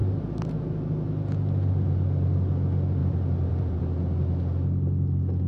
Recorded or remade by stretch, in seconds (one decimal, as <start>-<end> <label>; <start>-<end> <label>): 0.0-3.0 recorded; 3.0-3.8 remade; 3.8-5.5 recorded